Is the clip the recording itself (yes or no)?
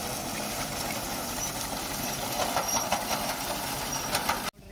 yes